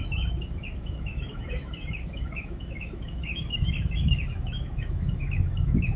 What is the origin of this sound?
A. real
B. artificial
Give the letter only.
B